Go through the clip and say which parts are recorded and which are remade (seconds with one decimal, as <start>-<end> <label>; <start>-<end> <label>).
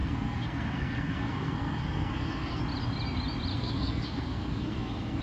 0.0-2.6 remade; 2.6-3.5 recorded; 3.5-5.2 remade